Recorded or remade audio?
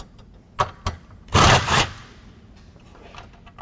recorded